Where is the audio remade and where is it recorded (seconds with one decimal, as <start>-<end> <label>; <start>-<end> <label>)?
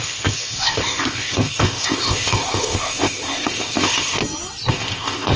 0.0-4.2 remade; 4.2-4.7 recorded; 4.7-5.4 remade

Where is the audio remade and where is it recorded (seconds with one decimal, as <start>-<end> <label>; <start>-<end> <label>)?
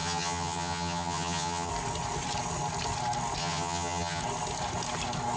0.0-1.7 remade; 1.7-3.4 recorded; 3.4-4.2 remade; 4.2-5.4 recorded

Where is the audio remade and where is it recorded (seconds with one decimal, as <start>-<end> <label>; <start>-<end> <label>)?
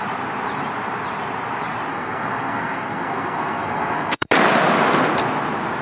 0.0-1.9 recorded; 1.9-4.3 remade; 4.3-5.8 recorded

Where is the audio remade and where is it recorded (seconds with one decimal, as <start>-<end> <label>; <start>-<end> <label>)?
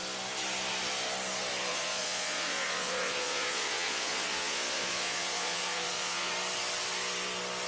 0.0-1.7 recorded; 1.7-6.3 remade; 6.3-7.7 recorded